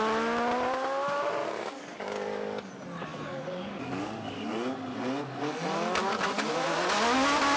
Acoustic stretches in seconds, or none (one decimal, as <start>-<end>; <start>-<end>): 0.0-1.4; 2.7-3.1; 4.5-6.0; 6.5-7.6